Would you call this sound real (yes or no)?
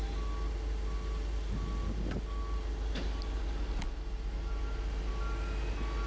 yes